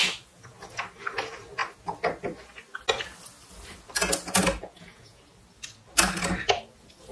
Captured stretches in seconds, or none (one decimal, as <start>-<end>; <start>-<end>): 0.0-4.6; 5.2-7.1